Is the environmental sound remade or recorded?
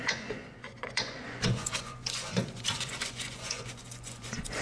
remade